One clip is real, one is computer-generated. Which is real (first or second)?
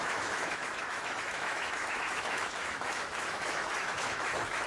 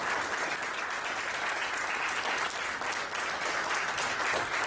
second